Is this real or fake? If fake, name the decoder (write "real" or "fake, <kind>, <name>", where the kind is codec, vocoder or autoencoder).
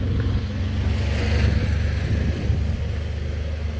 real